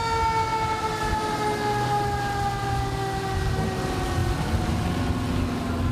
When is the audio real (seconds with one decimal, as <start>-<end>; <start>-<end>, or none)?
0.0-5.9